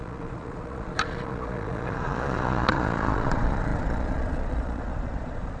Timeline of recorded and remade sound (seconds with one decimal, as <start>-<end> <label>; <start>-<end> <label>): 0.0-5.6 remade